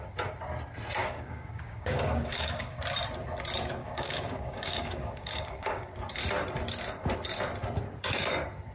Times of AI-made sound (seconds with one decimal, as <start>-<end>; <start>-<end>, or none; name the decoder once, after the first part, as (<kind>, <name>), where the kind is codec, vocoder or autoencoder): 1.0-2.8 (codec, DAC); 3.8-5.9